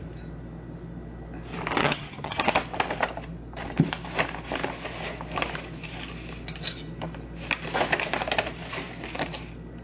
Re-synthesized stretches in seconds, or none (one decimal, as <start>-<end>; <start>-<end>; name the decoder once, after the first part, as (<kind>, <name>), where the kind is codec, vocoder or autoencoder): 1.8-2.5 (vocoder, HiFi-GAN)